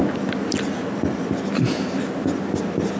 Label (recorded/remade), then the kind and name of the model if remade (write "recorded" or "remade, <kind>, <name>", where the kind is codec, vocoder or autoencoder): recorded